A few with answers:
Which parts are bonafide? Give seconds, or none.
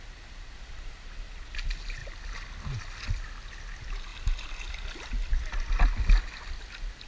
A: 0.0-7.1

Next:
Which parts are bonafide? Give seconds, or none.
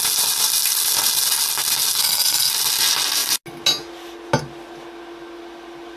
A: 0.0-2.0; 2.5-6.0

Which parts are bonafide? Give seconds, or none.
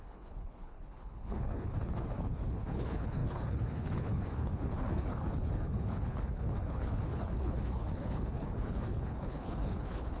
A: none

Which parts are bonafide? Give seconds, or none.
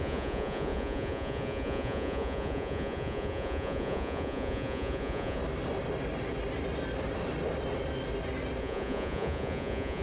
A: 5.4-8.6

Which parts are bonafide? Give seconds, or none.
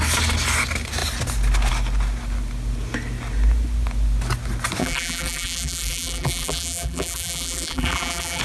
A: 0.0-4.8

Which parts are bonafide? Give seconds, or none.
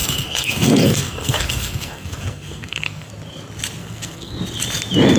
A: 3.1-3.8; 4.4-5.2